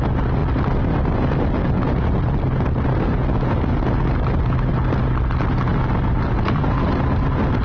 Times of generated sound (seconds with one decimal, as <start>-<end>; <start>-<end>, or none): 0.4-1.0; 5.7-6.3